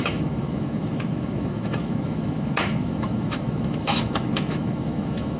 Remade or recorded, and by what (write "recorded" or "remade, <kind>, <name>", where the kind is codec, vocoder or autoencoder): remade, autoencoder, DAC-VAE